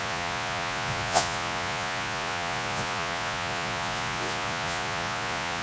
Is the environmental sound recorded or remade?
remade